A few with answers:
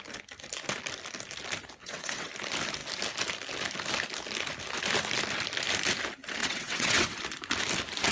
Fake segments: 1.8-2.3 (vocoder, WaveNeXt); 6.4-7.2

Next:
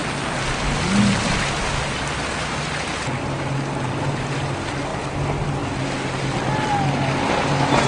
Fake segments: none

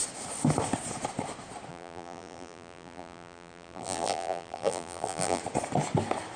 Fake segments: 1.7-5.4 (vocoder, BigVGAN v2)

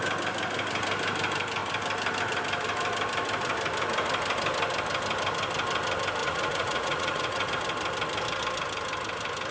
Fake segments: 6.2-7.5 (vocoder, Vocos)

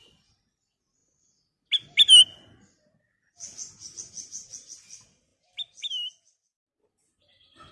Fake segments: none

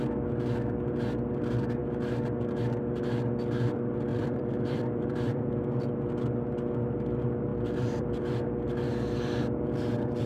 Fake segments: 4.1-5.8 (vocoder, BigVGAN v2); 7.5-8.2